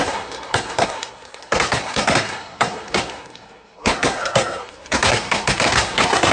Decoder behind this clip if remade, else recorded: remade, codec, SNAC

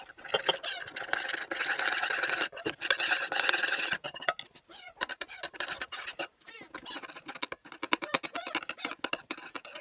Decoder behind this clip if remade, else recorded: recorded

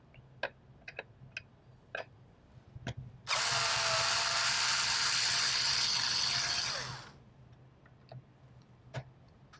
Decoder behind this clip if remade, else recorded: recorded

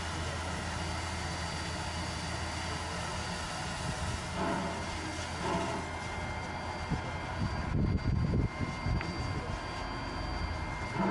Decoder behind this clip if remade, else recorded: recorded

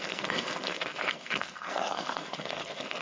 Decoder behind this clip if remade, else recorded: remade, codec, SNAC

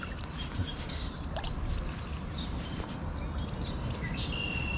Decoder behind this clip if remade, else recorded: recorded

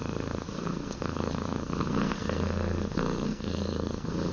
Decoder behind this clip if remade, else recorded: remade, codec, SNAC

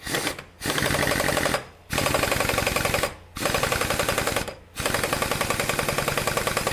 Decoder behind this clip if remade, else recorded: recorded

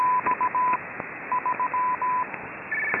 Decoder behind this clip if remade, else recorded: recorded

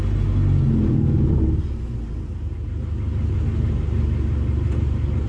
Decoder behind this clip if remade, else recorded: recorded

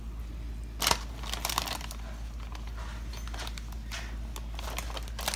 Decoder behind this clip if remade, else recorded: recorded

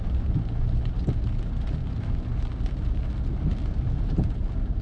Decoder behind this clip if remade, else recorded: recorded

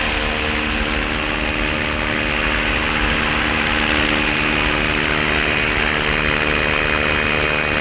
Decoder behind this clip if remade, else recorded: recorded